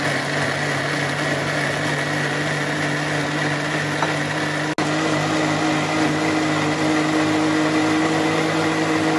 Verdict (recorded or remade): recorded